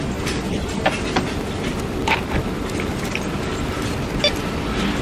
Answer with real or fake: real